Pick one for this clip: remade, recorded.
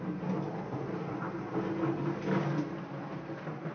recorded